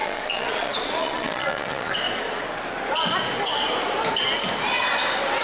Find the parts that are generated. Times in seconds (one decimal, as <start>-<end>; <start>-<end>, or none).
0.0-1.9